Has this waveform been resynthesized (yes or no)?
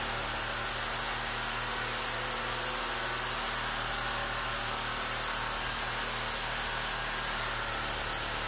no